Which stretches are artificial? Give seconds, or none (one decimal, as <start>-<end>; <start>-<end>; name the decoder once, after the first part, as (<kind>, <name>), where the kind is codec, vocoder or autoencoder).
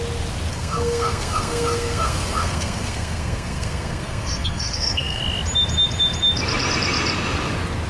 0.5-5.2 (codec, SNAC)